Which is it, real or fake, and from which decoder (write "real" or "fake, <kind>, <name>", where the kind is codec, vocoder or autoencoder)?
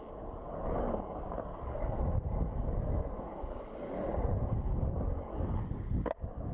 real